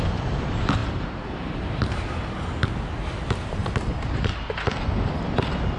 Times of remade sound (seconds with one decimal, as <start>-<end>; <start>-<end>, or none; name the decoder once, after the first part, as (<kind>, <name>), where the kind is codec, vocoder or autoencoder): 0.8-2.0 (vocoder, BigVGAN v2)

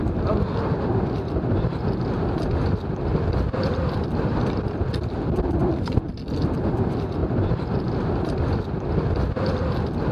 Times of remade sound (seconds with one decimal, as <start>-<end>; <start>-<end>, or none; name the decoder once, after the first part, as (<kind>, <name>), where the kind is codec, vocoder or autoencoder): 3.1-5.2 (vocoder, BigVGAN v2); 7.2-8.6

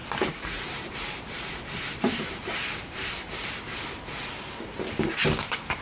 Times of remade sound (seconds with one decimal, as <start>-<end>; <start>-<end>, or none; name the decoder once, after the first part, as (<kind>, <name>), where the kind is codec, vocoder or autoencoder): 0.0-3.1 (vocoder, BigVGAN v2)